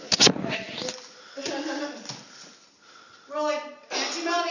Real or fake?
real